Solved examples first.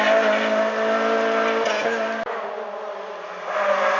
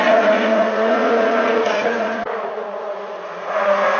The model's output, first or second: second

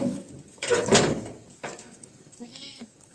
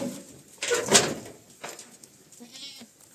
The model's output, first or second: first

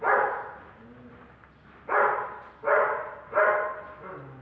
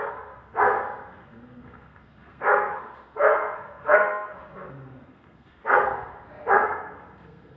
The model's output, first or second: second